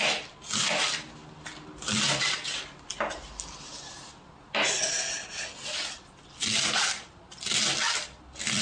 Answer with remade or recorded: recorded